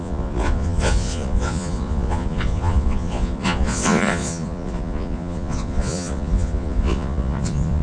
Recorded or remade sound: remade